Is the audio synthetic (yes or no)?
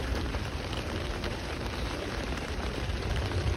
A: yes